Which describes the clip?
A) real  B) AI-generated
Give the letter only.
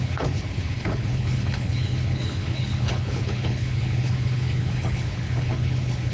B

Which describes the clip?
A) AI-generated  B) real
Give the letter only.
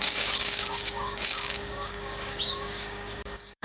A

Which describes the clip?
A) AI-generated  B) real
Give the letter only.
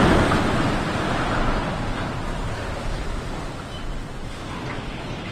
B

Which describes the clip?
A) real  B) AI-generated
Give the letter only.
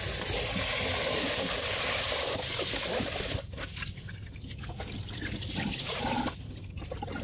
A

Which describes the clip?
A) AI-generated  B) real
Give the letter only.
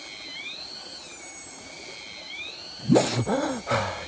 B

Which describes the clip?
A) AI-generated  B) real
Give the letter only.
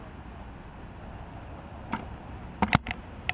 B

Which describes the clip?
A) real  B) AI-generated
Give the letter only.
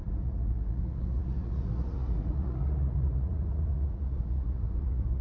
B